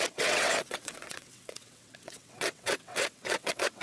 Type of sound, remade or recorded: remade